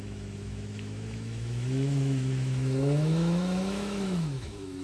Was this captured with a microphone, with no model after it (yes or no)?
no